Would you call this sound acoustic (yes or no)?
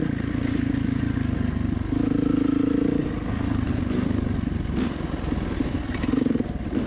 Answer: yes